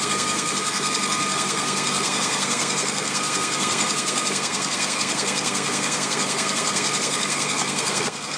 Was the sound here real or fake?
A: fake